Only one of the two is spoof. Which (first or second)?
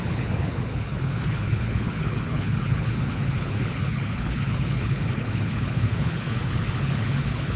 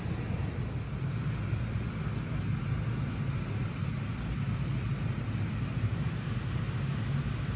first